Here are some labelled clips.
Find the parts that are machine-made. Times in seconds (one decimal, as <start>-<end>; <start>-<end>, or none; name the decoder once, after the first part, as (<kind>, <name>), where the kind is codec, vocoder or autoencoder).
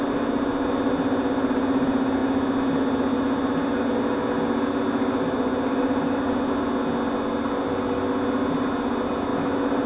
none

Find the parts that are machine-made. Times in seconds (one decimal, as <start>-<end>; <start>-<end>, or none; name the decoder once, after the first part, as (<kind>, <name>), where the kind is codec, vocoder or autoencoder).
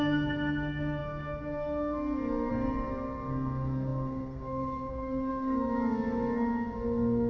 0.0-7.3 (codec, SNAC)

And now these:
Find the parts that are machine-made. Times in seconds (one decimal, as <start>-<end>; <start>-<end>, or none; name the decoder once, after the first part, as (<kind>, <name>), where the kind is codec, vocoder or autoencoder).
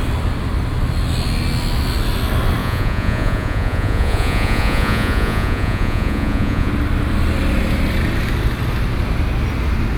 2.6-6.7 (vocoder, Vocos)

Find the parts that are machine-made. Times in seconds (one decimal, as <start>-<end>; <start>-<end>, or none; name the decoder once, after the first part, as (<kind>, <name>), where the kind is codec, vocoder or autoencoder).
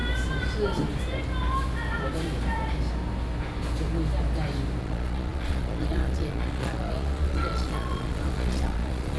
4.8-9.2 (vocoder, Vocos)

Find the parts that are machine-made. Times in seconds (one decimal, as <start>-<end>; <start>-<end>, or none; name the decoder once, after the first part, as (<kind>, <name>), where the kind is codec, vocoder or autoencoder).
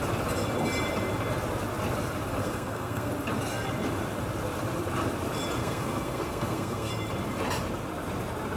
2.4-3.1 (codec, SNAC); 5.6-6.9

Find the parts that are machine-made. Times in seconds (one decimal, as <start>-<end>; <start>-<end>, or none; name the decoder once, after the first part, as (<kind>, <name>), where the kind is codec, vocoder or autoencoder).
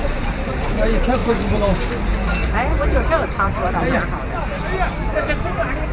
1.2-1.9 (vocoder, BigVGAN v2); 2.4-3.7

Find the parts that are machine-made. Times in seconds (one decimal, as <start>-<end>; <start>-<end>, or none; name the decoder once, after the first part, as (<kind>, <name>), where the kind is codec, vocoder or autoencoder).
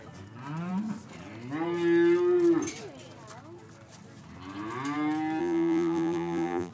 5.4-6.7 (vocoder, BigVGAN v2)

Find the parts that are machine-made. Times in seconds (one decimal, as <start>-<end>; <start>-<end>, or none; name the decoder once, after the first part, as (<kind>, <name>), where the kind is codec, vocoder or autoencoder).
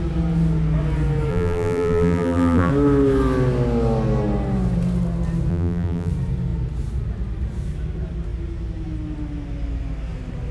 1.3-2.7 (vocoder, BigVGAN v2); 5.5-6.1